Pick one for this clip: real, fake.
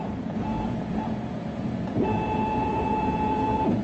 fake